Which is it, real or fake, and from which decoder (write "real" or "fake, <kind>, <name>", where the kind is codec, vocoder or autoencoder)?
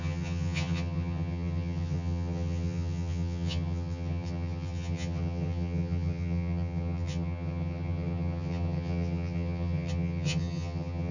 fake, vocoder, HiFi-GAN